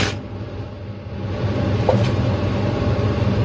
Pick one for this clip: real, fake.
real